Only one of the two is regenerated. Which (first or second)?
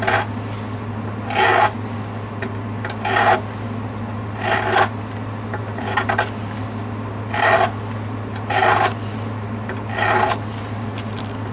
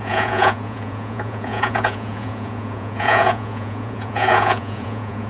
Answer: second